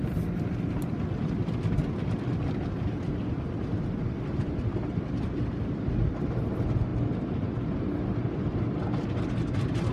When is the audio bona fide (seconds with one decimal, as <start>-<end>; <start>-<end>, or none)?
0.0-9.9